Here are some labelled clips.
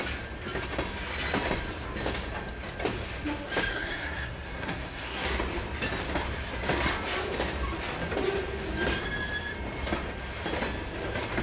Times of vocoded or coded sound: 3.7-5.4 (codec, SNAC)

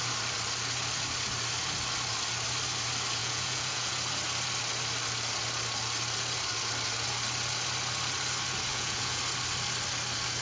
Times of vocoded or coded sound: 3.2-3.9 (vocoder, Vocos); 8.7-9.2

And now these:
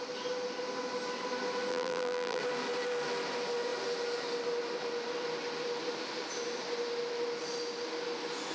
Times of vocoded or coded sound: 1.7-2.4 (vocoder, BigVGAN v2)